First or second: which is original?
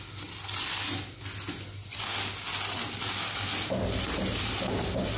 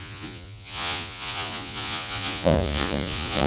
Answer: first